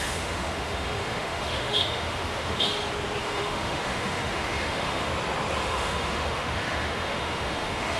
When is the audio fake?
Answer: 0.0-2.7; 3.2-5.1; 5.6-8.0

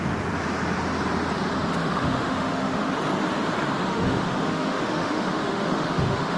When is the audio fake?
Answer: 1.8-2.9; 3.9-6.4

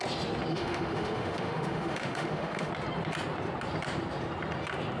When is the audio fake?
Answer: 0.5-2.7

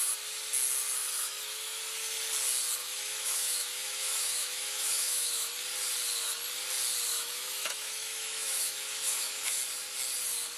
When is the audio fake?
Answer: 1.0-1.8; 2.8-5.5; 7.1-9.6

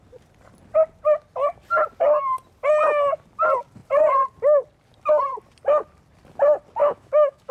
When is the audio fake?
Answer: 6.8-7.5

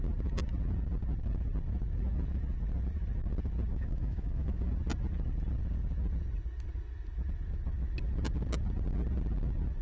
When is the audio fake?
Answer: 3.7-4.6